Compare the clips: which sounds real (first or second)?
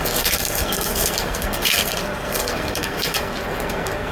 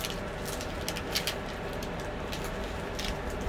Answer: second